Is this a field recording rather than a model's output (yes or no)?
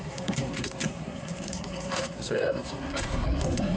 no